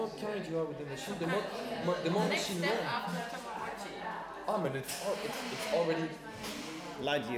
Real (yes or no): yes